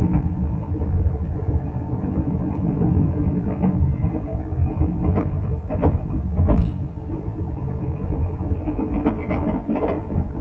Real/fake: fake